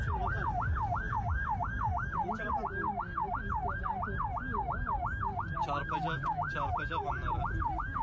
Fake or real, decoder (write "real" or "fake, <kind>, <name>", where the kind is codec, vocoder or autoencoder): real